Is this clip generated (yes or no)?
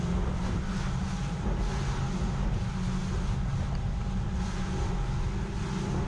no